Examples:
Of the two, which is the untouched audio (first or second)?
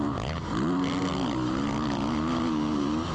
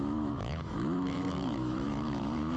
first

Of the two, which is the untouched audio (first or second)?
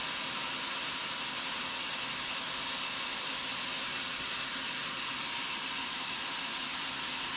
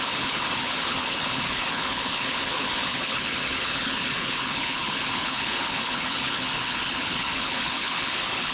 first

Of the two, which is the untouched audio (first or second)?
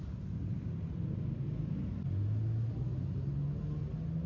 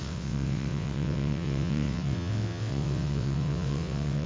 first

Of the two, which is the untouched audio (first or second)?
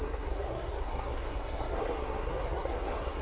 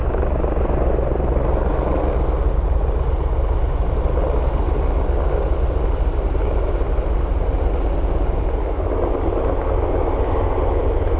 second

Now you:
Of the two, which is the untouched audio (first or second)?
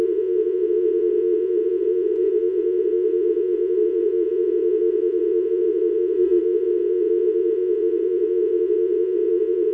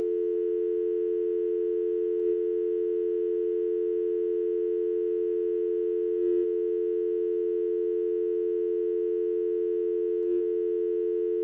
second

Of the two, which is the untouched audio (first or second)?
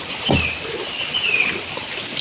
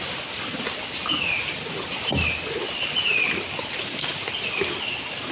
second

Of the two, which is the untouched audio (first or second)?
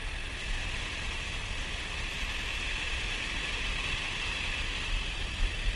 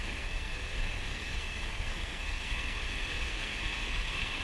first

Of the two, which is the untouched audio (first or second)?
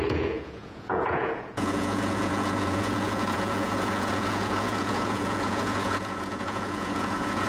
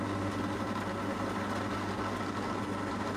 second